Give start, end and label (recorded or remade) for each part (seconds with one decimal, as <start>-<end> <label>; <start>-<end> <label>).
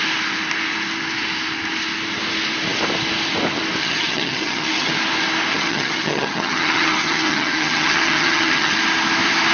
0.0-3.8 recorded; 3.8-4.9 remade; 4.9-5.5 recorded; 5.5-8.7 remade; 8.7-9.5 recorded